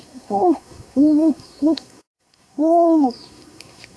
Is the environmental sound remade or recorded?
remade